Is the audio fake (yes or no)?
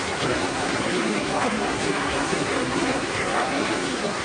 yes